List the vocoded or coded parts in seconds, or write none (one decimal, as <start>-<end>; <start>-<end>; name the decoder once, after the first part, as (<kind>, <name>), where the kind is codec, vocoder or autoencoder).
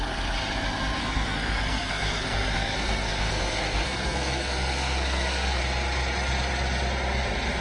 1.0-5.6 (codec, SNAC)